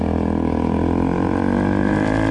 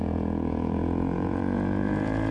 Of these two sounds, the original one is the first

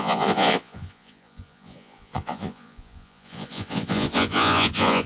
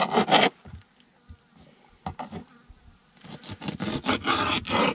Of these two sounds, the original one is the second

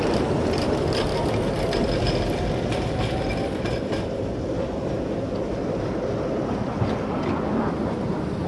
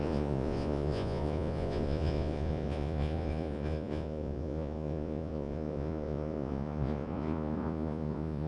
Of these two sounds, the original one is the first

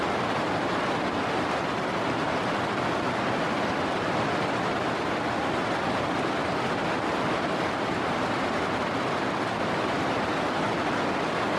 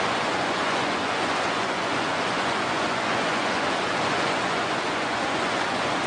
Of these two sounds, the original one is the first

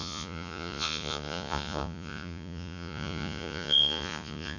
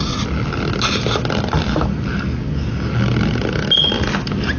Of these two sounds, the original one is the second